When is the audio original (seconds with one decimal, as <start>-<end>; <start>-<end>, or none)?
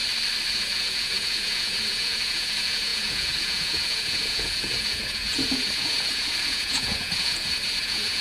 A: 0.0-0.5